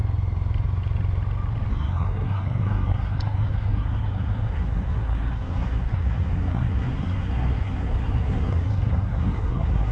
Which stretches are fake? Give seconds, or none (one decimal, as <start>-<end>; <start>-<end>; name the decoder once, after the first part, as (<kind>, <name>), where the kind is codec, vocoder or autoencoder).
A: 1.7-9.9 (codec, SNAC)